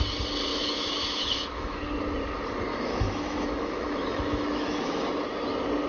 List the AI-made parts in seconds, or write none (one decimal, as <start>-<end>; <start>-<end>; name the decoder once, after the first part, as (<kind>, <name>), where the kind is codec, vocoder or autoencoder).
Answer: 0.5-1.8 (autoencoder, DAC-VAE); 2.7-5.1